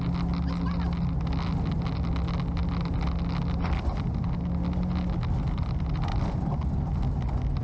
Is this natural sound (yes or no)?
yes